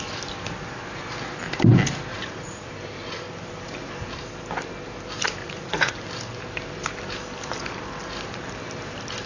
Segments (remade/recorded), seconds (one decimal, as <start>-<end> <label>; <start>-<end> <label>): 0.0-2.1 recorded; 2.1-2.7 remade; 2.7-5.4 recorded; 5.4-5.9 remade; 5.9-9.3 recorded